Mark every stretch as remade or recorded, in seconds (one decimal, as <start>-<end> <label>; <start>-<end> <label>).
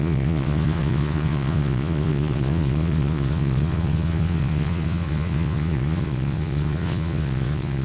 0.0-7.8 remade